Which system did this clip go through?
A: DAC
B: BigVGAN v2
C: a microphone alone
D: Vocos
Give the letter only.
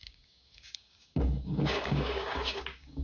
A